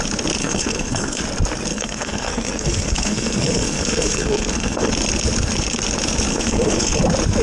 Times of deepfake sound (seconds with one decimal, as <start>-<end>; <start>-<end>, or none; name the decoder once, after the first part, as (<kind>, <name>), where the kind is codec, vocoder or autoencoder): 0.4-1.2 (codec, SNAC); 1.7-4.9; 6.3-7.0